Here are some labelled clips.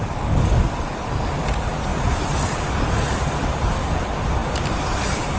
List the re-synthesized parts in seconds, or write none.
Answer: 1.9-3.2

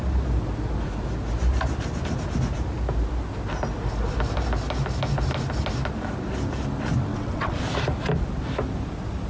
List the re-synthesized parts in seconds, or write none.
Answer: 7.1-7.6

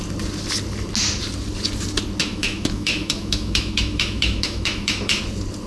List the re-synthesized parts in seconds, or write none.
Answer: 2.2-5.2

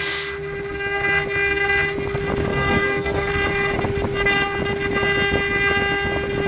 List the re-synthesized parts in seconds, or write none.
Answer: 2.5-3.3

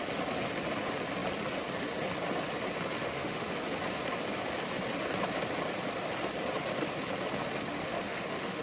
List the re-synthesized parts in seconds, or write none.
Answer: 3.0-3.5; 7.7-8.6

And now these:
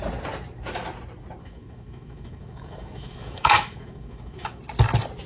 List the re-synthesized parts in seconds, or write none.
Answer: 1.4-4.6

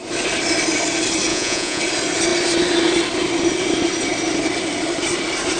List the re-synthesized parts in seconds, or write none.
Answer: 1.3-1.8

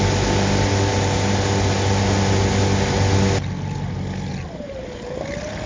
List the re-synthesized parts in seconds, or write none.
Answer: none